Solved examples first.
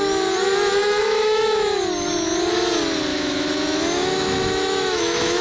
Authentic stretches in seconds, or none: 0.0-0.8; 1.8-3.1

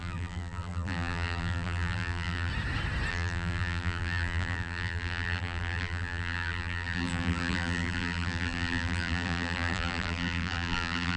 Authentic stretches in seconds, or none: 2.5-3.1

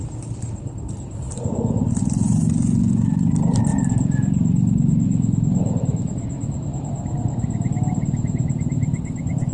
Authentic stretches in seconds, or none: 0.0-9.5

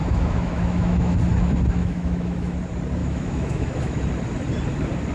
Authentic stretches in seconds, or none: 1.2-1.8; 2.6-3.0; 4.0-5.1

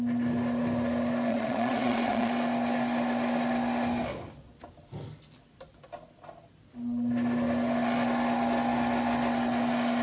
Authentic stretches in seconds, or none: 0.0-1.3; 2.3-10.0

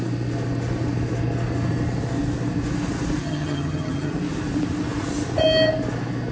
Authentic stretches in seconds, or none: 0.0-3.2; 4.1-6.3

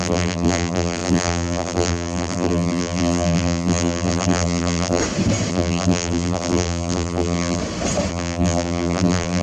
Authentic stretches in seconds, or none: 5.0-5.5; 7.6-8.1